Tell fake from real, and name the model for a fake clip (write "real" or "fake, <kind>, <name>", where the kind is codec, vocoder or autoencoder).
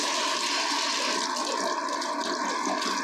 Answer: real